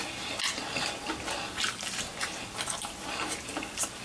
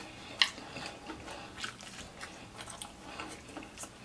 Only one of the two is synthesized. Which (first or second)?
first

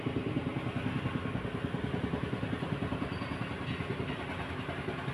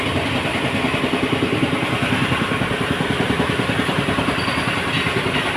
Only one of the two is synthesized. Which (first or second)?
second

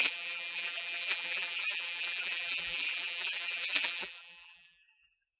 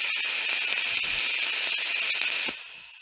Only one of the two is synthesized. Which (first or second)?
first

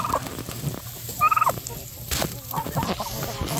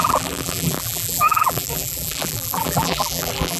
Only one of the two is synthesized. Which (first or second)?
second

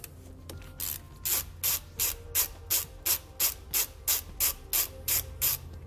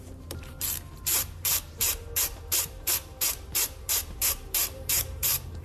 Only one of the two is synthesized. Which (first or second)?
second